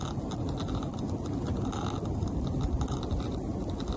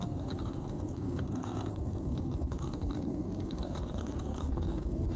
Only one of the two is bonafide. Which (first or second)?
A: first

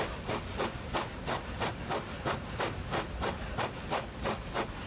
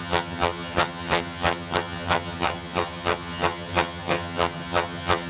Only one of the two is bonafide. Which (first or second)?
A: first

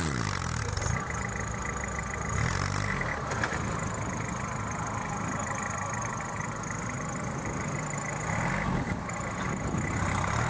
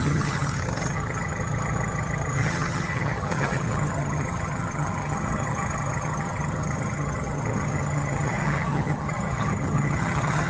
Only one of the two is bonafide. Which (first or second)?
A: first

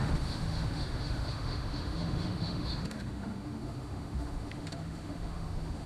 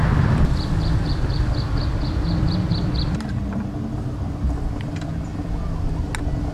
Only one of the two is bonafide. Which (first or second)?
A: second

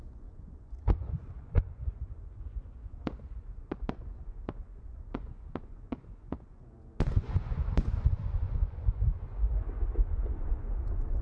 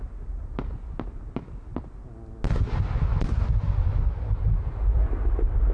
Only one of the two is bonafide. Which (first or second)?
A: second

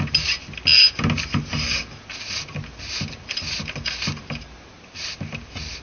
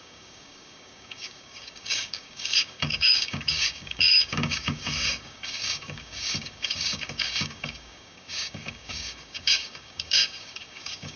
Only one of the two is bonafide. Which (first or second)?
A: first